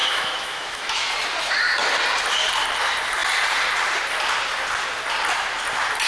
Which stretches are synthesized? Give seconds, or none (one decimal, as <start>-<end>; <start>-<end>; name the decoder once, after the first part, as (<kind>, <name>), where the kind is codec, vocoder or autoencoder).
0.0-1.1 (autoencoder, DAC-VAE)